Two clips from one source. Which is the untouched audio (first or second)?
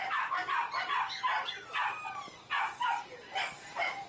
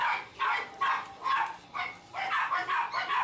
second